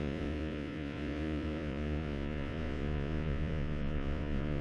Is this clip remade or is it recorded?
remade